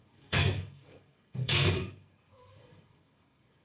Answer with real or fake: fake